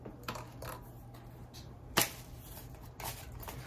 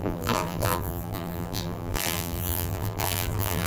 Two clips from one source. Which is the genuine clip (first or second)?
first